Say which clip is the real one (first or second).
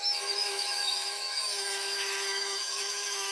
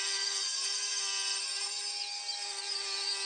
second